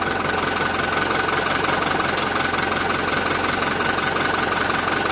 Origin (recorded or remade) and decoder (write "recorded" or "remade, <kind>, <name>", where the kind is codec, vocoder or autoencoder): recorded